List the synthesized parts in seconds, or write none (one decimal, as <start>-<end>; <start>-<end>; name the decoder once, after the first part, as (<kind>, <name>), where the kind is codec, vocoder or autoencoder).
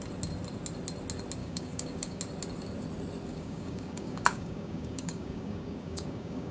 1.4-2.2 (codec, DAC); 3.3-6.5